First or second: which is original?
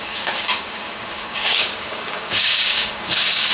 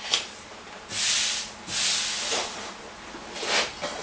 second